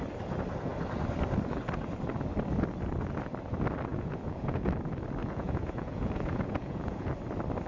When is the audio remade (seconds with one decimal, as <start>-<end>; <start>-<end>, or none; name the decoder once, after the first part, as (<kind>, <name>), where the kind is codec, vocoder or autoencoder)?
3.9-4.7 (vocoder, Vocos); 5.2-7.1